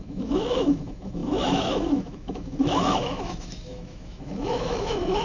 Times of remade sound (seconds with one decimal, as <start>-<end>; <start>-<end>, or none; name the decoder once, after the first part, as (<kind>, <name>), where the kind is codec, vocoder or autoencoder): 0.0-5.2 (autoencoder, DAC-VAE)